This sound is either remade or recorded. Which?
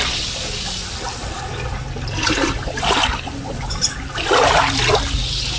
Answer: recorded